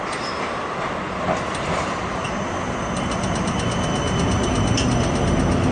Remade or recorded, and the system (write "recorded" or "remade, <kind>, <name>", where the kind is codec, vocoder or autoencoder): recorded